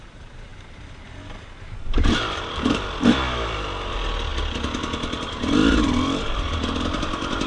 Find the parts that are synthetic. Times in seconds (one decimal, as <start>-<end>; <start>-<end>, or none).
none